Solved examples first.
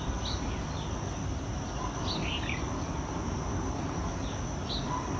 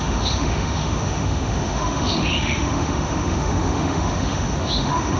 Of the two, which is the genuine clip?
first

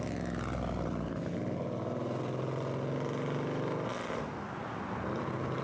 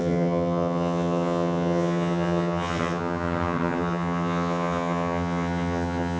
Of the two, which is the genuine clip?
first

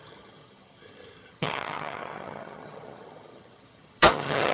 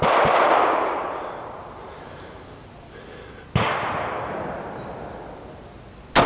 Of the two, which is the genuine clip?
second